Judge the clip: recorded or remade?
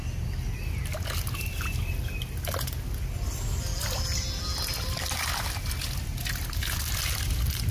recorded